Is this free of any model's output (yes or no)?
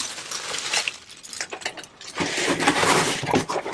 yes